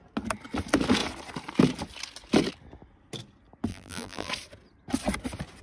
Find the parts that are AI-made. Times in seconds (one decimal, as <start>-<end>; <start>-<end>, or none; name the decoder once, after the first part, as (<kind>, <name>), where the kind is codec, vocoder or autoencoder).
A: 3.7-4.3 (vocoder, BigVGAN v2)